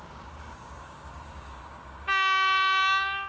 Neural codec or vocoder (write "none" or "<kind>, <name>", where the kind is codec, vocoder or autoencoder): codec, DAC